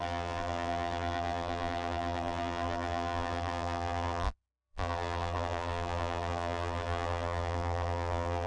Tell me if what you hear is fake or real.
fake